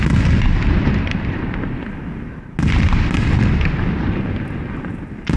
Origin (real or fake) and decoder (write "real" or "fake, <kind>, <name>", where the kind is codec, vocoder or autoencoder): real